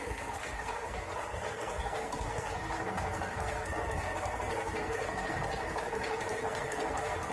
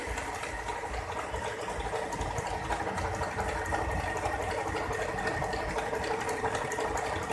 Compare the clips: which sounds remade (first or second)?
first